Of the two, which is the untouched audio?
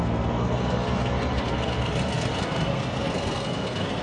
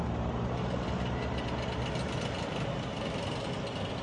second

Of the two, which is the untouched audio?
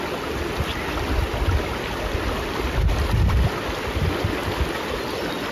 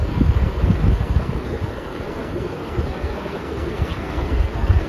first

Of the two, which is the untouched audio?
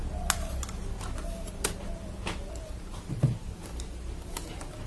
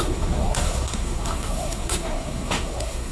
first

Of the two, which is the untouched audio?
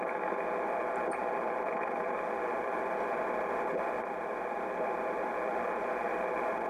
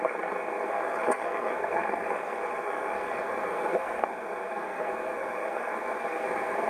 first